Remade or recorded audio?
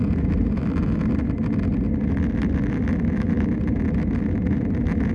recorded